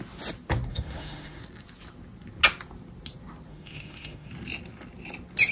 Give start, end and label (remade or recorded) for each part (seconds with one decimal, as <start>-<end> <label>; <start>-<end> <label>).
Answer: 0.0-0.7 recorded; 0.7-1.4 remade; 1.4-3.5 recorded; 3.5-4.3 remade; 4.3-5.5 recorded

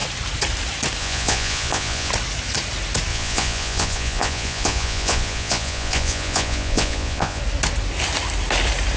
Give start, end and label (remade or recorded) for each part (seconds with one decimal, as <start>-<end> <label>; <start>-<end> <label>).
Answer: 0.0-1.0 recorded; 1.0-2.1 remade; 2.1-3.1 recorded; 3.1-7.4 remade; 7.4-9.0 recorded

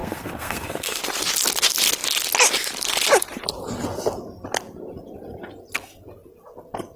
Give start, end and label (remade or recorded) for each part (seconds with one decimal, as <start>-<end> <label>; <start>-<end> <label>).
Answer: 0.0-1.0 remade; 1.0-7.0 recorded

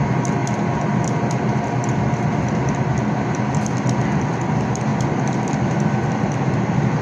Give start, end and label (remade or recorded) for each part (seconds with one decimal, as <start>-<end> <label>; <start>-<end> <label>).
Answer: 0.0-7.0 recorded

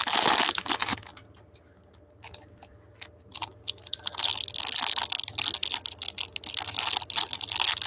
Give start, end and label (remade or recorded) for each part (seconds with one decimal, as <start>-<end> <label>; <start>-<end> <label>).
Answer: 0.0-7.9 recorded

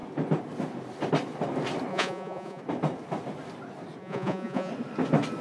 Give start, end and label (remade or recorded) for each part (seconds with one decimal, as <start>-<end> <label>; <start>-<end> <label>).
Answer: 0.0-1.9 recorded; 1.9-2.6 remade; 2.6-4.0 recorded; 4.0-4.7 remade; 4.7-5.4 recorded

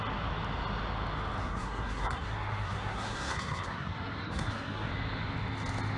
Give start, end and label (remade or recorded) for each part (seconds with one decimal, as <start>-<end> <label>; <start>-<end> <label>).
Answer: 0.0-1.4 recorded; 1.4-4.9 remade; 4.9-6.0 recorded

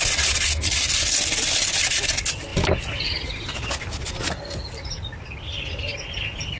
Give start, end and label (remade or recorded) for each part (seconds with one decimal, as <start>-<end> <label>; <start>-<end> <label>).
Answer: 0.0-6.6 recorded